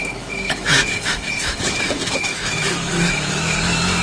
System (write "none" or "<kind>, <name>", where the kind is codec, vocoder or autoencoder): autoencoder, DAC-VAE